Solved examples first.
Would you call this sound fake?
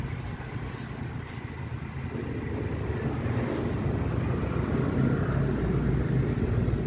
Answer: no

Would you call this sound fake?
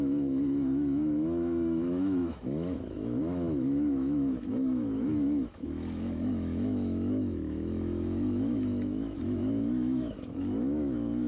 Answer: yes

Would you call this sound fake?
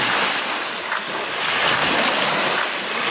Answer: no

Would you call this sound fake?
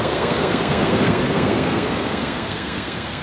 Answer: yes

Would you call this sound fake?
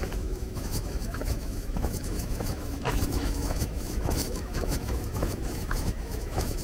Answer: yes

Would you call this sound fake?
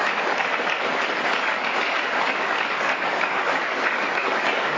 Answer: yes